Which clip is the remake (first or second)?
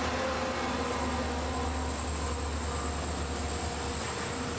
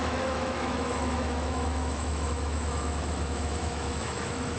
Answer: second